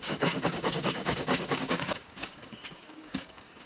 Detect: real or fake fake